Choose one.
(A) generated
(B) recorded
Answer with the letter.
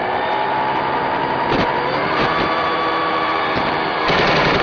A